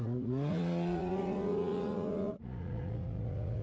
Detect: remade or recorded remade